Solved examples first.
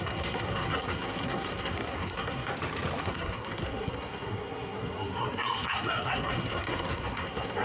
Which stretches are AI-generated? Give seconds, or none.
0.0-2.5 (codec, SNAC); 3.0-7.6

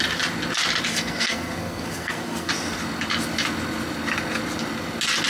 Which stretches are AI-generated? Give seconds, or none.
0.9-2.5 (codec, SNAC)

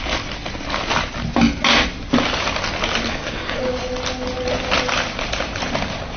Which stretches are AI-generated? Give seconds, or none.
3.1-3.6 (codec, SNAC)

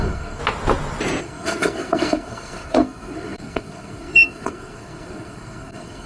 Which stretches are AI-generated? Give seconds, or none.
0.0-0.4 (codec, SNAC); 1.2-6.1

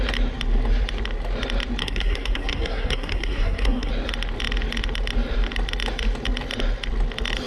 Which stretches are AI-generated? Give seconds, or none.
1.8-3.9 (codec, SNAC)

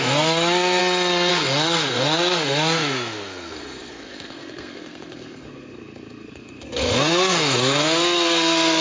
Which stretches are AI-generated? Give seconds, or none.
0.0-0.8 (codec, SNAC); 1.3-8.8

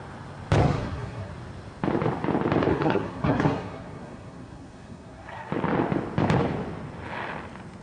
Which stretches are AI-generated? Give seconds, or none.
0.6-1.3 (codec, SNAC); 2.7-5.5

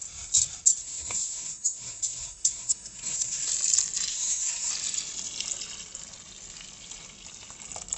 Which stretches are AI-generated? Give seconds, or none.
0.8-3.5 (codec, SNAC); 4.1-4.7